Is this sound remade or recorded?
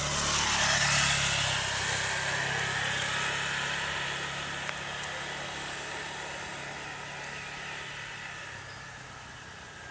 recorded